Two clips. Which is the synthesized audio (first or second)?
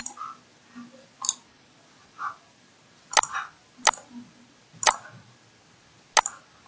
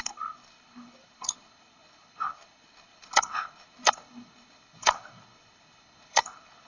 second